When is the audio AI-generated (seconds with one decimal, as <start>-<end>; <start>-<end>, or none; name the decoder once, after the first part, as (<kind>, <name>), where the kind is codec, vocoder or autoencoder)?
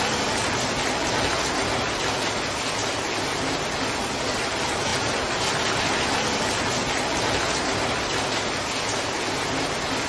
none